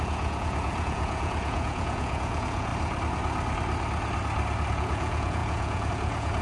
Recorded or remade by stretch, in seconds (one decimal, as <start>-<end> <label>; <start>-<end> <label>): 0.0-2.7 remade; 2.7-4.7 recorded; 4.7-6.4 remade